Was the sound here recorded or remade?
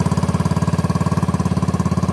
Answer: recorded